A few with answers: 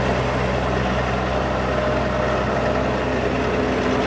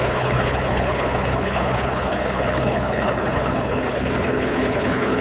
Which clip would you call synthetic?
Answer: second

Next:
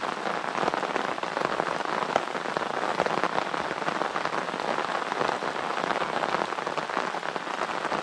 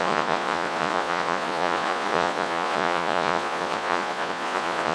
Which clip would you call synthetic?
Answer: second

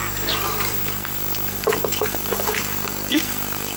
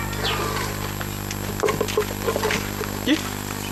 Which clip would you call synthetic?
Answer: first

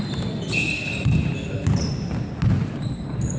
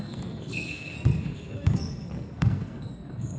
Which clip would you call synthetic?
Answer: second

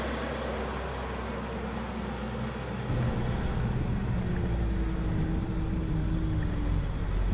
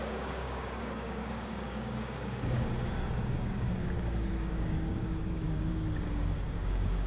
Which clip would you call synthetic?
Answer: second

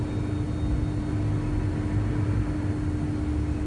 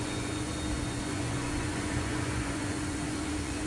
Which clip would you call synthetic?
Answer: second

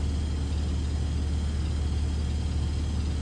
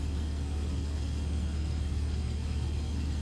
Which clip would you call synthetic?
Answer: second